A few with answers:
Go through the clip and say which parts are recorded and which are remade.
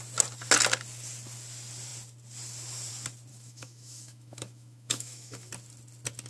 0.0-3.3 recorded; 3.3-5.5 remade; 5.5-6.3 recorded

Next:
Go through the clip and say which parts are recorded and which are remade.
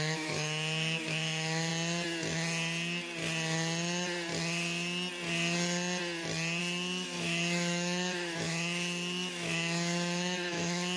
0.0-1.7 remade; 1.7-6.6 recorded; 6.6-11.0 remade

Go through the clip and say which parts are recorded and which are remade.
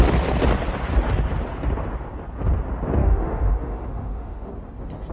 0.0-3.0 recorded; 3.0-4.5 remade; 4.5-5.1 recorded